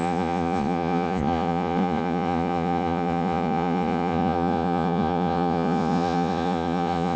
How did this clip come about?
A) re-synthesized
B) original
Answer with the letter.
A